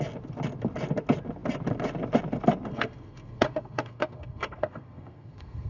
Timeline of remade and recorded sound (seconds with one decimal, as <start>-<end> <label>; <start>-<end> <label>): 0.0-2.7 recorded; 2.7-5.7 remade